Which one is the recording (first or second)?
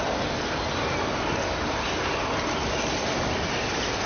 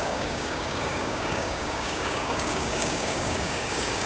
first